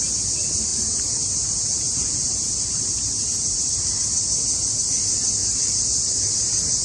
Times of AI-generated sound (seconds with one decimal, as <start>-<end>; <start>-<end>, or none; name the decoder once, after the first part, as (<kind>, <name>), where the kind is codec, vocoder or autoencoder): 0.7-4.8 (vocoder, BigVGAN v2); 5.4-6.1

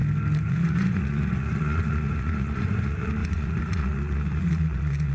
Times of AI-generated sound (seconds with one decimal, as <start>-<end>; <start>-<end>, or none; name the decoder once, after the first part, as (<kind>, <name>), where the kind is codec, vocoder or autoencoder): 0.5-5.1 (vocoder, Vocos)

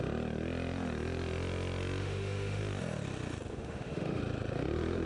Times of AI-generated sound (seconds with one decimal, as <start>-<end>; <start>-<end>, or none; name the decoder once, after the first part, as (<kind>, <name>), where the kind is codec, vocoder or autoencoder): 2.0-2.6 (autoencoder, DAC-VAE); 3.5-4.2